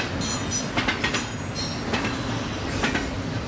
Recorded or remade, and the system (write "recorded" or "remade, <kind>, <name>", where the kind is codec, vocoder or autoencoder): recorded